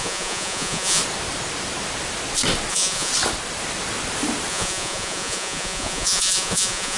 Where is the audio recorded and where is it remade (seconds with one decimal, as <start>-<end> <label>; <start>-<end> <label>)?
0.0-1.0 remade; 1.0-2.7 recorded; 2.7-3.1 remade; 3.1-4.5 recorded; 4.5-7.0 remade